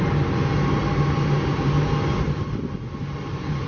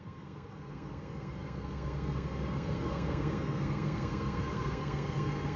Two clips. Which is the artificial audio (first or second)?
second